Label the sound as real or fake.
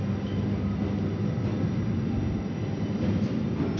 real